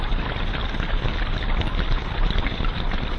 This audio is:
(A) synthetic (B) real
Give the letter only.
B